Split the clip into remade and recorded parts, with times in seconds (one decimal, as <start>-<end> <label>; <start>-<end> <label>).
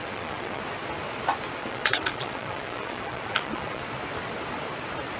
0.0-0.6 remade; 0.6-1.6 recorded; 1.6-3.8 remade; 3.8-5.2 recorded